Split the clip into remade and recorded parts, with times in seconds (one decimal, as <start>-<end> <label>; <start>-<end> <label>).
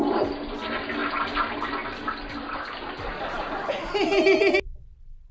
0.0-5.3 recorded